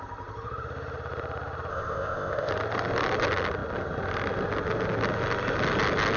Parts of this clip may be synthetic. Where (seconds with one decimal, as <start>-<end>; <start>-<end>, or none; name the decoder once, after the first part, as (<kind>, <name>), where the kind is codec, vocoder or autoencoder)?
1.7-2.5 (codec, ZipCodec)